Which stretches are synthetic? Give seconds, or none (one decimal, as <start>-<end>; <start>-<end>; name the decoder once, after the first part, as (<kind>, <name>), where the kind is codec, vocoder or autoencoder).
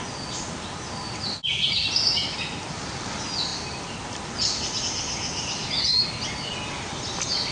none